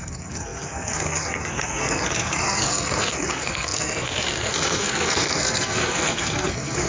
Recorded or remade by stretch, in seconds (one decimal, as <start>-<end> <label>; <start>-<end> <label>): 0.0-6.9 remade